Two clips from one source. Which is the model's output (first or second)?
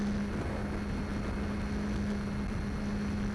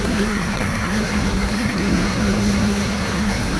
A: second